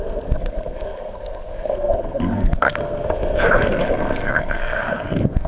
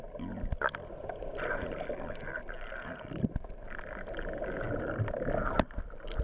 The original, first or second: second